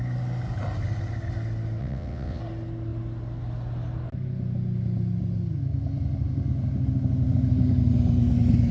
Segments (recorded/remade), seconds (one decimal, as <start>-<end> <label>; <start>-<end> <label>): 0.0-1.8 recorded; 1.8-2.4 remade; 2.4-8.7 recorded

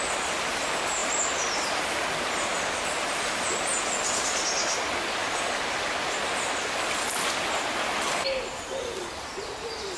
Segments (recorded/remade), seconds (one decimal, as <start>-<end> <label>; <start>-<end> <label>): 0.0-10.0 recorded

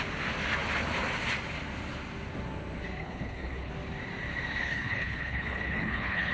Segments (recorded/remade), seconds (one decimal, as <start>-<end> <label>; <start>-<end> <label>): 0.0-3.0 recorded; 3.0-3.7 remade; 3.7-4.6 recorded; 4.6-6.3 remade